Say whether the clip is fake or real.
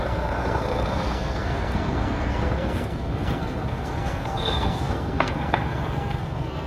fake